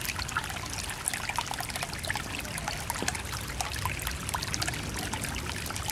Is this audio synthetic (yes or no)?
no